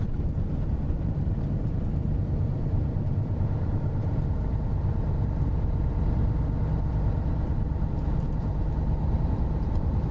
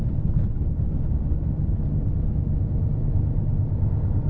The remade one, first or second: first